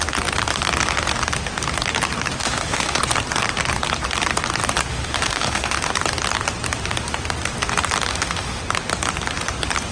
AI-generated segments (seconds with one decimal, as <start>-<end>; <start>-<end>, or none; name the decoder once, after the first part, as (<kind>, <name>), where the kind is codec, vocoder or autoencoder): 2.4-3.0 (autoencoder, DAC-VAE); 4.9-5.9; 8.1-8.6